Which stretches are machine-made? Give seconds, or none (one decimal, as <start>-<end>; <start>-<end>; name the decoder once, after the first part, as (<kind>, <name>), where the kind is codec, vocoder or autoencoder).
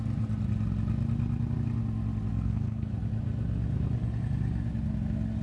2.3-2.9 (codec, SNAC)